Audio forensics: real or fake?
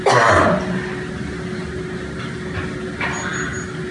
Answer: real